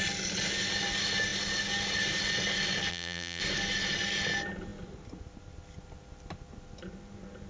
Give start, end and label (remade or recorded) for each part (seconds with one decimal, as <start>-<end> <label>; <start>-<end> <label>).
0.0-2.9 recorded; 2.9-3.4 remade; 3.4-7.5 recorded